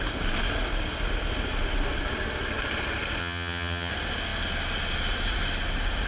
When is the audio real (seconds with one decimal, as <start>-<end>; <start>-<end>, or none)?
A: 0.0-3.2; 3.9-6.1